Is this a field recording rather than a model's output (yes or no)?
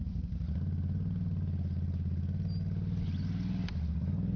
yes